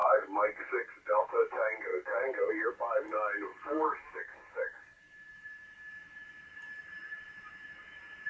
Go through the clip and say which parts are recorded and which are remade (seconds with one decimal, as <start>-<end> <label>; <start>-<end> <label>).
0.0-0.9 remade; 0.9-1.9 recorded; 1.9-2.7 remade; 2.7-3.5 recorded; 3.5-5.0 remade; 5.0-8.3 recorded